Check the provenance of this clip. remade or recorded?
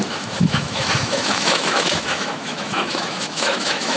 remade